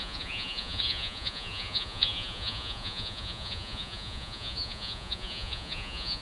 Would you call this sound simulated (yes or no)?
yes